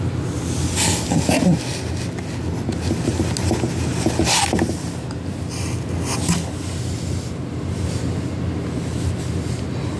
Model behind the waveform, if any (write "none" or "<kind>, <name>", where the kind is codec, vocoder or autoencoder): none